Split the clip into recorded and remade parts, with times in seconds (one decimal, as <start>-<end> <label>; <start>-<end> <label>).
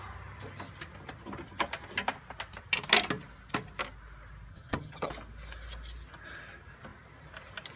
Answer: 0.0-4.5 recorded; 4.5-5.1 remade; 5.1-7.8 recorded